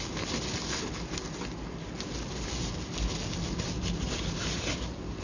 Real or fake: real